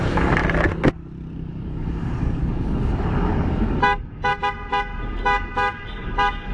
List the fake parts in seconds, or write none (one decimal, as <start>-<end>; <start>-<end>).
0.0-0.4; 1.5-4.3; 5.0-6.5